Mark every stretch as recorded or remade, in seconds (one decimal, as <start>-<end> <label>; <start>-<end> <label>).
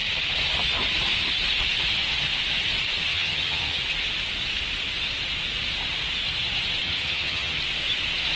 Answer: 0.0-3.1 recorded; 3.1-3.8 remade; 3.8-6.8 recorded; 6.8-7.6 remade; 7.6-8.4 recorded